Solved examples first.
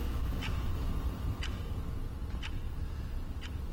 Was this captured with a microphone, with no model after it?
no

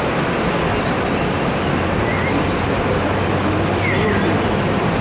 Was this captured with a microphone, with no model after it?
yes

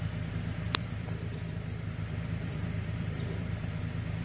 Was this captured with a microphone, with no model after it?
no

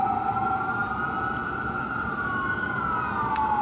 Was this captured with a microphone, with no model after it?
yes